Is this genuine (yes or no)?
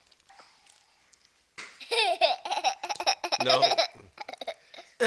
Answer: yes